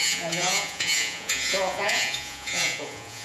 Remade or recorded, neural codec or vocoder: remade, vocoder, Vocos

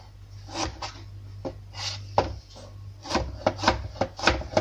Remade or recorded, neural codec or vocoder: recorded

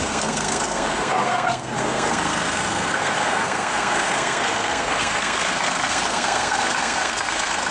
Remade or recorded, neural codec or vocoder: remade, codec, SNAC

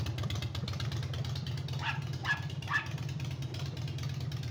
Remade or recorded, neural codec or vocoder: recorded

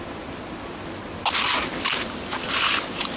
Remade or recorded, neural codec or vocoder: recorded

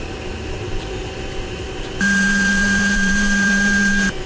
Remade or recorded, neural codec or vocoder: remade, vocoder, BigVGAN v2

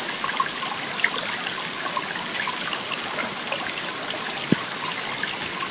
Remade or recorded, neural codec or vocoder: recorded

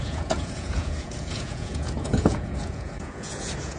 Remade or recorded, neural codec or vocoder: remade, vocoder, Vocos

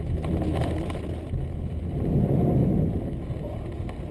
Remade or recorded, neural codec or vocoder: recorded